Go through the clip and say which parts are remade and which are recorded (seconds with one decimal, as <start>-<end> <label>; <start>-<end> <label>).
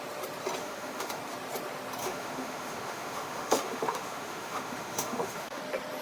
0.0-0.6 recorded; 0.6-1.2 remade; 1.2-2.0 recorded; 2.0-5.6 remade; 5.6-6.0 recorded